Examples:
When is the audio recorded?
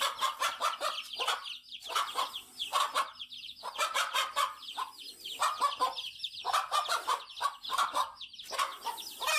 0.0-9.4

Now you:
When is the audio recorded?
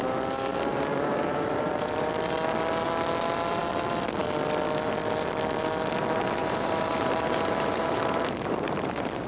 0.0-0.7; 2.1-6.4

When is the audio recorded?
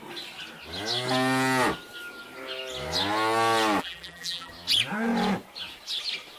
0.0-3.8; 4.5-6.4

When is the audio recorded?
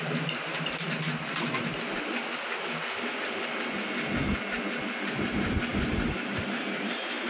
0.0-0.5; 1.7-5.7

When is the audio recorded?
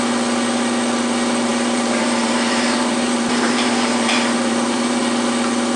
0.0-1.5; 5.0-5.8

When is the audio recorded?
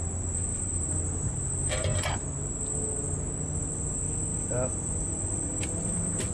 0.0-0.5; 2.1-4.3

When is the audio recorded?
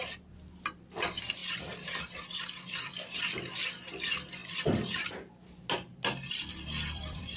1.4-2.4; 4.4-6.5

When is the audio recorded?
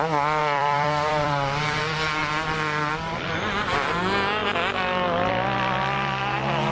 0.0-0.4; 1.8-6.7